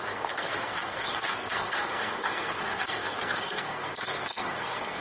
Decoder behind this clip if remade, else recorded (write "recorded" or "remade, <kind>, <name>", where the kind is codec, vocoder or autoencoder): remade, codec, SNAC